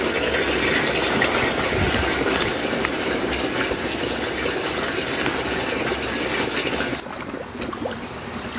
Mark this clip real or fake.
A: real